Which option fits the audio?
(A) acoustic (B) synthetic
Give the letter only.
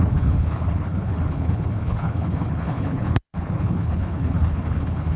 B